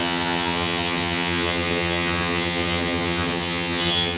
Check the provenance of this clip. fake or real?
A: fake